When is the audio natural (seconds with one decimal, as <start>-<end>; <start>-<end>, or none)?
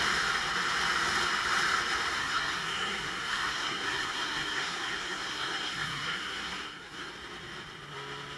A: 0.0-2.1; 7.1-8.4